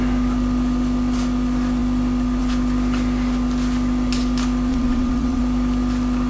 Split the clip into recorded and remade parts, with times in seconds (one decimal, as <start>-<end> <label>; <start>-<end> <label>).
0.0-4.7 recorded; 4.7-5.4 remade; 5.4-6.3 recorded